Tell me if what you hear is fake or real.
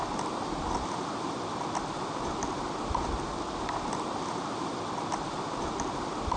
real